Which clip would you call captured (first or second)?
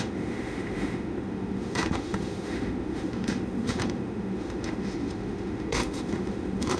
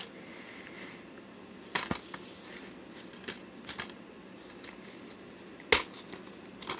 second